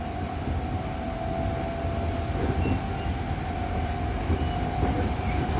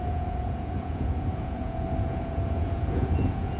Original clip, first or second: first